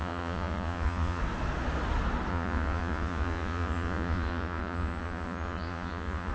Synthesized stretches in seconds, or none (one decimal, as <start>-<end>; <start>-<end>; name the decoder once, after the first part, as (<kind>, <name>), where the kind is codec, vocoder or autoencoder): 0.0-1.2 (vocoder, Vocos); 2.3-6.3